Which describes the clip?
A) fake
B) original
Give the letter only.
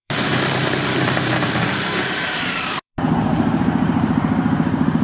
A